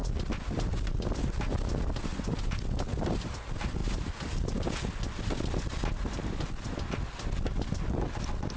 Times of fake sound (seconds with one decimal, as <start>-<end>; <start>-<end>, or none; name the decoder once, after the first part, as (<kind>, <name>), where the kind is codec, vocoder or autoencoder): none